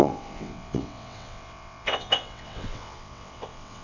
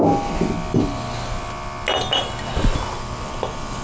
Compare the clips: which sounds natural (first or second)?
second